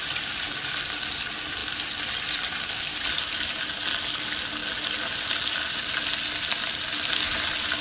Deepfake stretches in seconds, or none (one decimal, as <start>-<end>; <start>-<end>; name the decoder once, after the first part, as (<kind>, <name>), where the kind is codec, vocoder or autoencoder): none